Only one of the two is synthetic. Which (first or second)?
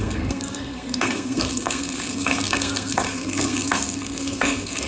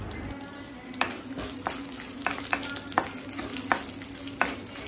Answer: first